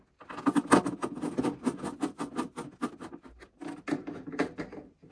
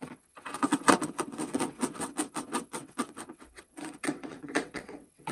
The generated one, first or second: second